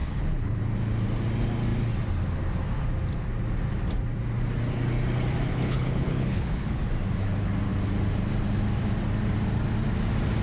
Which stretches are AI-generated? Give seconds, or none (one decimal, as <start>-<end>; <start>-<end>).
0.0-0.6; 5.5-6.8